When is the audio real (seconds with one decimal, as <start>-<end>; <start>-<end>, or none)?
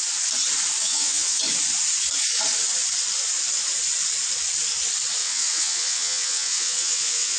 0.0-0.8; 1.4-5.2